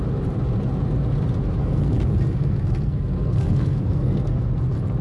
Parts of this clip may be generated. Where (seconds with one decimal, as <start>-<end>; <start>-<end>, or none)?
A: 1.6-4.6